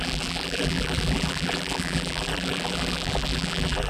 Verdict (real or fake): fake